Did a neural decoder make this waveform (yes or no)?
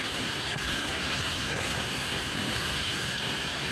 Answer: yes